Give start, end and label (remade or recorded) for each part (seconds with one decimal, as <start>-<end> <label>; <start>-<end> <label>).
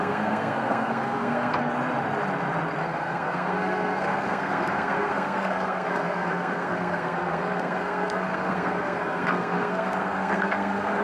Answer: 0.0-1.6 remade; 1.6-2.8 recorded; 2.8-11.0 remade